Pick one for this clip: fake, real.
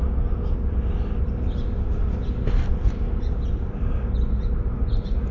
real